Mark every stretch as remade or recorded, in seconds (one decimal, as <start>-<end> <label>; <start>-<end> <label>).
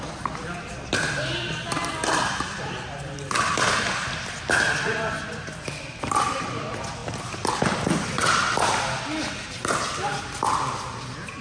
0.0-11.4 recorded